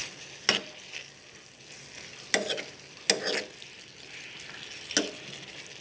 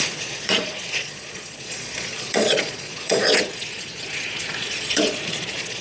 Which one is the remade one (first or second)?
second